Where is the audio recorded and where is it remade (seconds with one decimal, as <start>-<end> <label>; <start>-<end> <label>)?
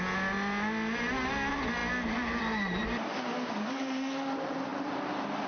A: 0.0-5.5 recorded